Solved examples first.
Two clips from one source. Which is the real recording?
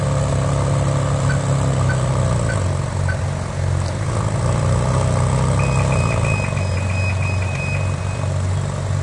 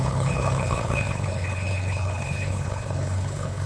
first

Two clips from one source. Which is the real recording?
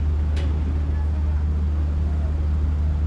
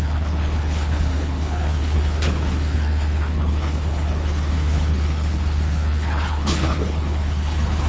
first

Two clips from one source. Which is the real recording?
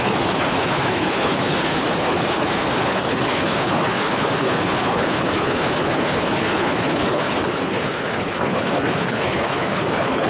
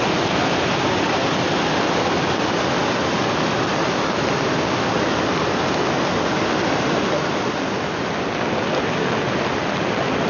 second